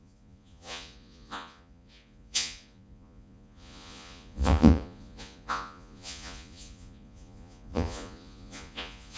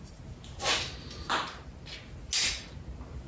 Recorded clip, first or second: second